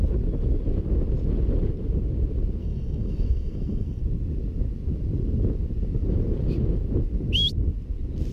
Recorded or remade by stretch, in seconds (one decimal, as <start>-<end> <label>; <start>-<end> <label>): 0.0-2.6 recorded; 2.6-4.0 remade; 4.0-8.3 recorded